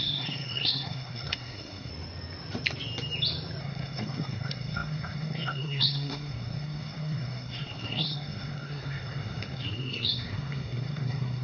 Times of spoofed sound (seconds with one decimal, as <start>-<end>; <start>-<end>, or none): 0.0-1.9; 3.6-11.4